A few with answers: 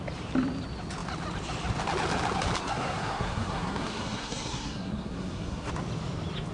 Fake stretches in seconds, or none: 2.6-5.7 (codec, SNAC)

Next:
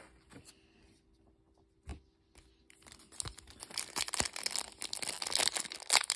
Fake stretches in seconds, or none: none

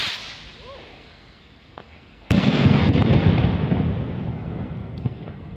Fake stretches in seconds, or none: 0.9-3.3 (codec, SNAC); 4.3-5.6

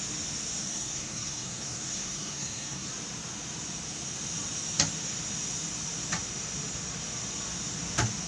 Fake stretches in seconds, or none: 0.6-2.9 (codec, SNAC)

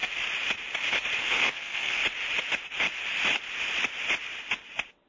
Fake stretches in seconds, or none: 1.2-2.0 (codec, SNAC)

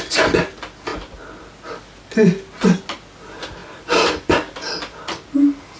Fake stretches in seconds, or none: none

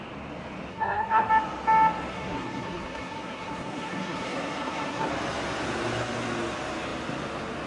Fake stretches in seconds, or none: 0.7-1.3 (codec, SNAC); 2.1-5.1

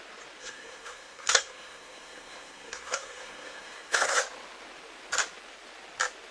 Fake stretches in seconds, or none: 0.4-4.2 (codec, SNAC)